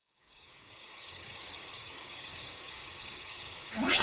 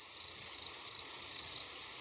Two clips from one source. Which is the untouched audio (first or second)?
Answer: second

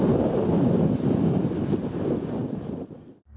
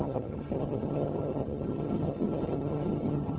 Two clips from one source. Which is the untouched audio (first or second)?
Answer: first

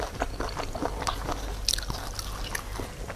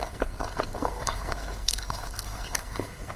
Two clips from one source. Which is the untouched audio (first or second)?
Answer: first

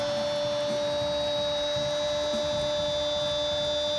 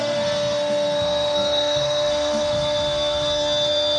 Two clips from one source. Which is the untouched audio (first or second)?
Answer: first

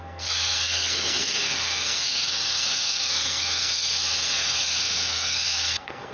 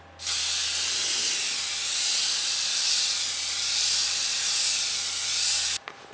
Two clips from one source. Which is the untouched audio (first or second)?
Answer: second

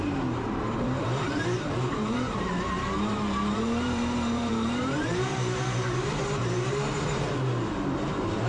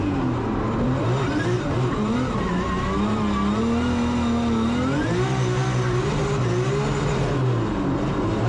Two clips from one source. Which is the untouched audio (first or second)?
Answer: second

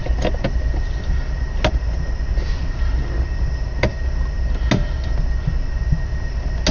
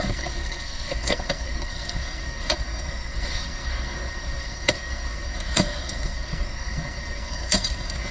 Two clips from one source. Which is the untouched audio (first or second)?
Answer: first